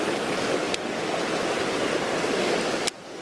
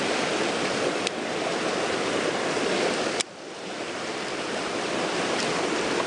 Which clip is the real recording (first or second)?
first